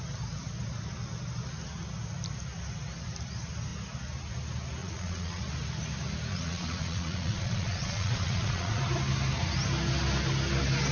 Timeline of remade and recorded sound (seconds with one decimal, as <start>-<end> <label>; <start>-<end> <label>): 0.0-4.8 recorded; 4.8-5.4 remade; 5.4-6.3 recorded; 6.3-8.8 remade; 8.8-10.9 recorded